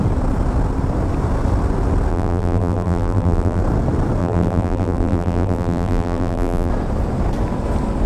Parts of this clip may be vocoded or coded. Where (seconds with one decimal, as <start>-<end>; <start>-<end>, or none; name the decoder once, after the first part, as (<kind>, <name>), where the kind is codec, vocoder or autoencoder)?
2.1-3.6 (vocoder, BigVGAN v2); 4.2-6.7